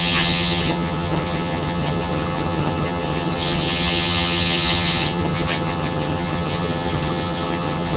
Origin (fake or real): fake